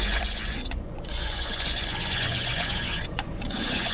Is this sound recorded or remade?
remade